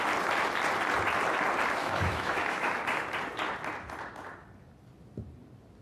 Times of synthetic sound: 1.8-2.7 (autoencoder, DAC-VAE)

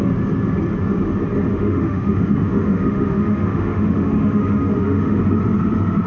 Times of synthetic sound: 1.5-5.2 (autoencoder, DAC-VAE)

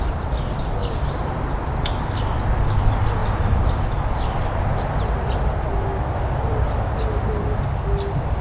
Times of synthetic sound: none

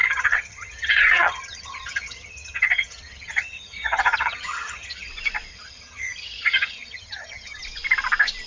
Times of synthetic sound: 0.0-5.1 (vocoder, HiFi-GAN); 5.5-7.6